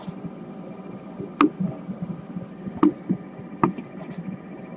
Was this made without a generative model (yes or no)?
yes